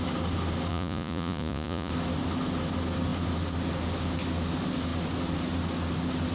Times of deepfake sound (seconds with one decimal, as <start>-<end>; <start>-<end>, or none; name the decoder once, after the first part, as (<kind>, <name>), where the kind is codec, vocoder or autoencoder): 0.7-1.9 (vocoder, Vocos)